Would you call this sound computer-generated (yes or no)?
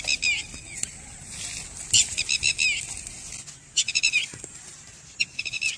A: no